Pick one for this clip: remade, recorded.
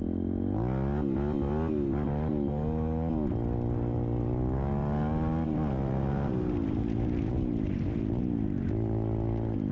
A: recorded